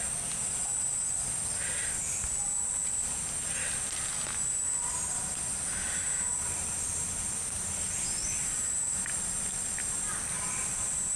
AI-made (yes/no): no